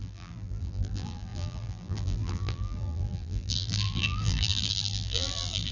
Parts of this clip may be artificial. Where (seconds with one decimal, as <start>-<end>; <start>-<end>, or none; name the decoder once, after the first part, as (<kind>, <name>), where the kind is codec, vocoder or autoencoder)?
0.0-5.7 (vocoder, BigVGAN v2)

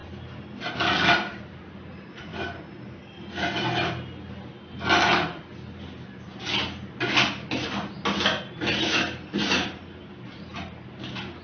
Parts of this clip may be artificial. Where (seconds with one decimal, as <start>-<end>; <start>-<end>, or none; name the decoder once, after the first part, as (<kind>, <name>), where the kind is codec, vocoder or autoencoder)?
none